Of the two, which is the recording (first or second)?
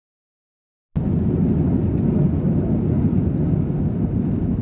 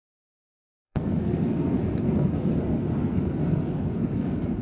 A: first